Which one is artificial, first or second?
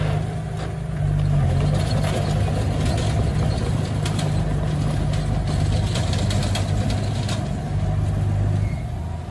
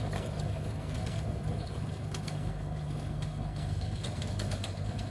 second